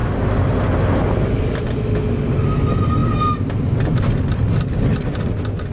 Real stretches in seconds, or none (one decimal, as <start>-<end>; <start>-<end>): 0.0-5.7